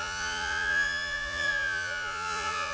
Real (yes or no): no